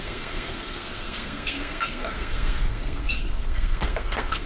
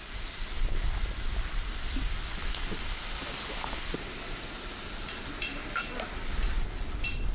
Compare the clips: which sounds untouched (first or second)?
second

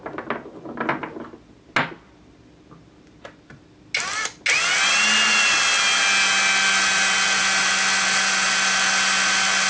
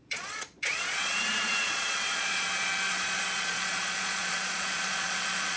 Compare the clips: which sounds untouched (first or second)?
first